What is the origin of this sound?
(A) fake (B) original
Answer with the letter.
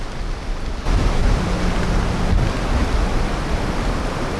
B